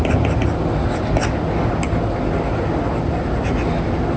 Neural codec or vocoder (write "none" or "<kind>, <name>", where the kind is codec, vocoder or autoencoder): none